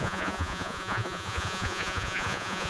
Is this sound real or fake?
fake